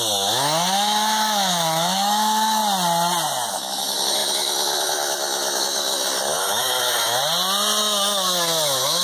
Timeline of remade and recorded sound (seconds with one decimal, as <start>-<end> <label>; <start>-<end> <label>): 0.0-2.6 remade; 2.6-3.5 recorded; 3.5-7.2 remade; 7.2-7.8 recorded; 7.8-9.0 remade